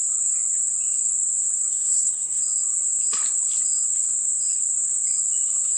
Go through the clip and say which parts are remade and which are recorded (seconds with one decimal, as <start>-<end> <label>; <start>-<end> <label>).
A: 0.0-1.7 recorded; 1.7-2.4 remade; 2.4-5.8 recorded